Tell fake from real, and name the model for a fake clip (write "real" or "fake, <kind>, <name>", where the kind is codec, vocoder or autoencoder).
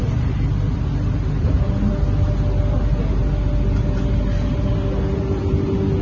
real